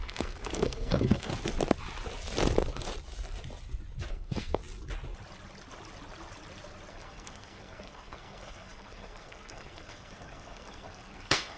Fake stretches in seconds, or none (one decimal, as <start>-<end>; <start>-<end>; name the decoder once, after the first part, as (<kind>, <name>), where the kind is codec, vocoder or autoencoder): 0.0-1.3 (codec, SNAC); 4.1-4.6; 6.9-11.6